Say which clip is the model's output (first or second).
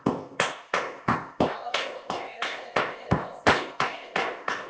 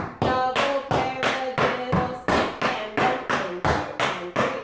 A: first